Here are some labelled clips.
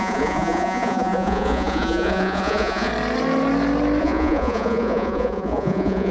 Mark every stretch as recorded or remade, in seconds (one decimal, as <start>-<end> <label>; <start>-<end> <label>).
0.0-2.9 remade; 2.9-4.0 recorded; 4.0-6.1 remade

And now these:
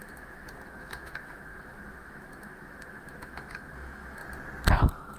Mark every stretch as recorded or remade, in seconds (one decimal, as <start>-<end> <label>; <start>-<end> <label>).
0.0-4.2 remade; 4.2-4.7 recorded; 4.7-5.2 remade

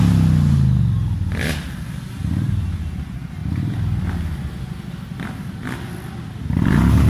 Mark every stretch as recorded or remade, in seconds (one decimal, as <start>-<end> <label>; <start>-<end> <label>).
0.0-7.1 recorded